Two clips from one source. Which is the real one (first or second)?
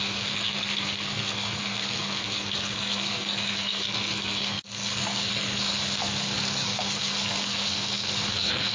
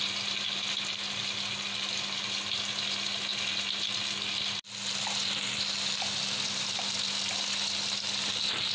second